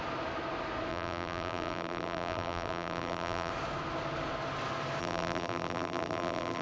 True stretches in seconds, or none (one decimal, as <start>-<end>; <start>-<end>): 0.0-0.9; 3.5-5.0